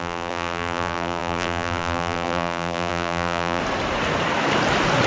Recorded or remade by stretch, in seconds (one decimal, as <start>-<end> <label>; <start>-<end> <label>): 0.0-3.6 remade; 3.6-5.1 recorded